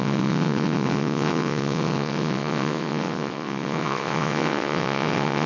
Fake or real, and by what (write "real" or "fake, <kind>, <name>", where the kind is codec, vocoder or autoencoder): fake, vocoder, WaveNeXt